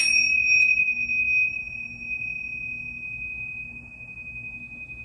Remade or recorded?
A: recorded